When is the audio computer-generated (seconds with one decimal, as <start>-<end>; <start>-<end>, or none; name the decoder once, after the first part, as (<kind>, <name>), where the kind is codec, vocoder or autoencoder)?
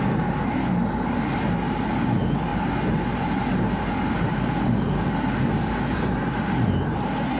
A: none